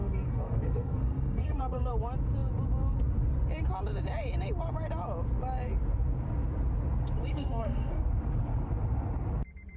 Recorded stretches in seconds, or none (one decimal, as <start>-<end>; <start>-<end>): 1.9-7.3; 8.0-9.8